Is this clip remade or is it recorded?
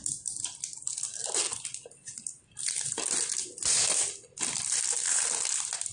recorded